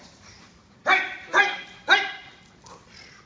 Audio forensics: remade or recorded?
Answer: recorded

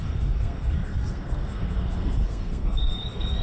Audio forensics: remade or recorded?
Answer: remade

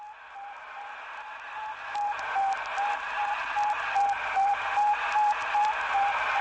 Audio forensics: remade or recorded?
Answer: recorded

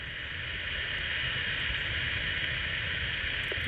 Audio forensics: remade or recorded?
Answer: recorded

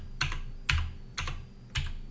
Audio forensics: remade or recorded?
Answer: recorded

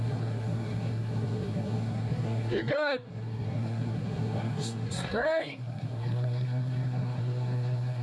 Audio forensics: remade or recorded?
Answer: remade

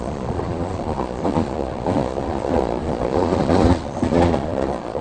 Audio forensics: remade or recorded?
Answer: remade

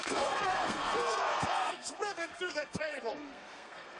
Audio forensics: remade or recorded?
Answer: remade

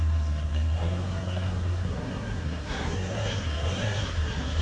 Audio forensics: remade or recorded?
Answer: remade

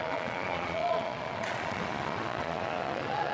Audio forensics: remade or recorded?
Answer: remade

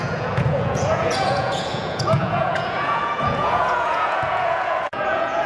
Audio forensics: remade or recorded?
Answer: remade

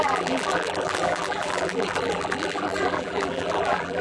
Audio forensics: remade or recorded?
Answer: remade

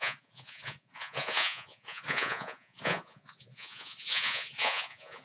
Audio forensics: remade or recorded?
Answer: remade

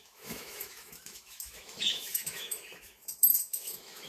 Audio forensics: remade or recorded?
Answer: remade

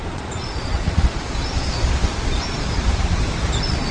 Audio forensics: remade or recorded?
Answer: remade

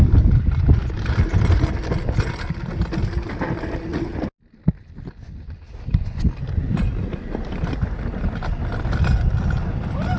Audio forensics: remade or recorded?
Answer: recorded